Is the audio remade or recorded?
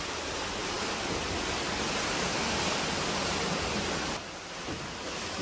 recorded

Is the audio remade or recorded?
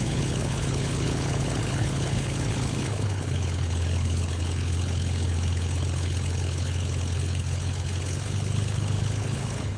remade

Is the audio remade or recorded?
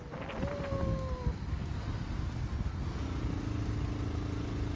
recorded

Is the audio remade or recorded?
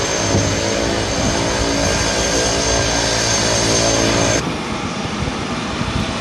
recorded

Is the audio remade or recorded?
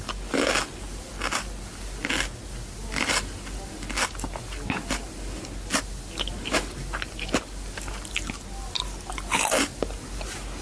recorded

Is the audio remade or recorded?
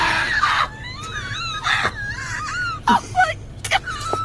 recorded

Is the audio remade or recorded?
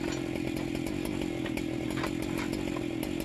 recorded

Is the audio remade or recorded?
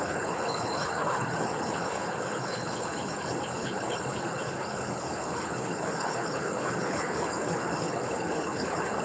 remade